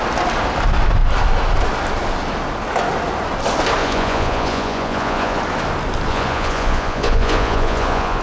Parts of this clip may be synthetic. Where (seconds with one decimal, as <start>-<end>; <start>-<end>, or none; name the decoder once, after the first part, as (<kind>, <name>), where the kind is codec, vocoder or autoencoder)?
3.8-5.4 (vocoder, Vocos); 6.1-8.2